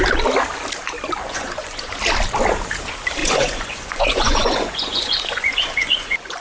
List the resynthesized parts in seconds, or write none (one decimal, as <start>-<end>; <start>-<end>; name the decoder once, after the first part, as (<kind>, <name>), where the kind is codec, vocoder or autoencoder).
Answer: 1.2-1.9 (vocoder, Vocos); 3.2-6.4